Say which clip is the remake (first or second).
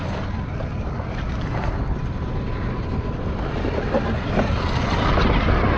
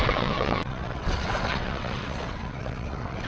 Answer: second